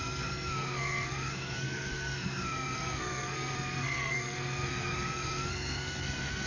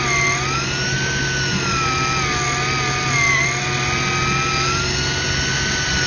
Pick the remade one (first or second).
first